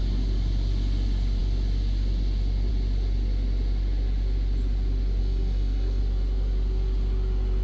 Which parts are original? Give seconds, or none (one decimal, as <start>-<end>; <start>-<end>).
0.0-5.2; 6.0-7.6